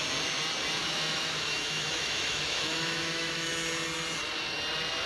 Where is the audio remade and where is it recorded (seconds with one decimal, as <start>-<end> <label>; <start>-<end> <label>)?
0.0-0.8 recorded; 0.8-3.5 remade; 3.5-5.1 recorded